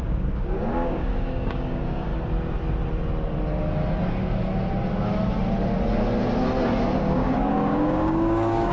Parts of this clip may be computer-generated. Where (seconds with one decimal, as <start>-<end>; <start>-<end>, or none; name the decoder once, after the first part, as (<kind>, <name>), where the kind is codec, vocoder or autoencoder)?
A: 0.0-2.1 (codec, DAC); 7.0-8.7